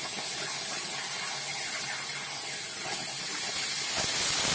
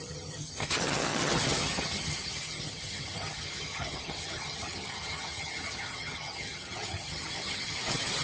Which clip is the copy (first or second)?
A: second